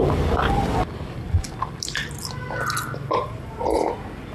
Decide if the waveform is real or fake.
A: real